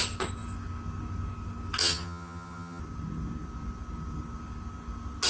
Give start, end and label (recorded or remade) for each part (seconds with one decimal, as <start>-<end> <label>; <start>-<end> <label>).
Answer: 0.0-1.8 recorded; 1.8-2.8 remade; 2.8-5.3 recorded